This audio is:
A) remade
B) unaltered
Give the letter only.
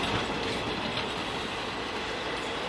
B